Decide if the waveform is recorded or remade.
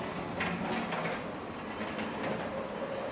recorded